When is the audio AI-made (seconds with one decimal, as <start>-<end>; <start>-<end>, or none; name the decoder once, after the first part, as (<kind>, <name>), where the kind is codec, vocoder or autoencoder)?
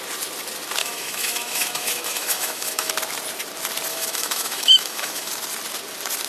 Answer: 0.8-2.9 (autoencoder, DAC-VAE); 3.9-5.3